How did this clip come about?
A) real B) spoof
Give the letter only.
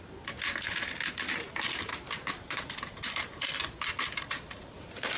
A